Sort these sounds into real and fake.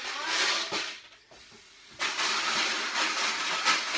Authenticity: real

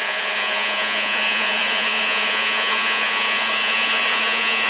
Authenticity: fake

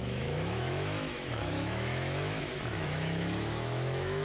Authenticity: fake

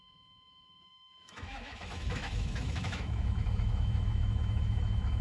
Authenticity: fake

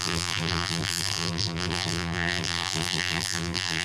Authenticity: fake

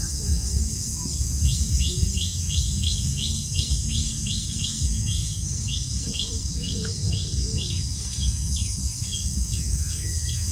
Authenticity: fake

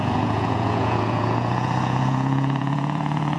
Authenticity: fake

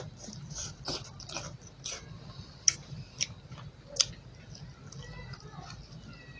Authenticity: real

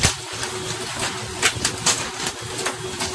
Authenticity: real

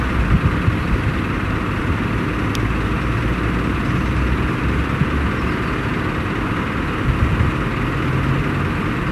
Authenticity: real